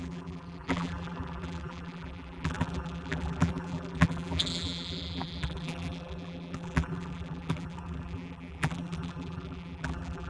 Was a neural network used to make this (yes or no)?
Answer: yes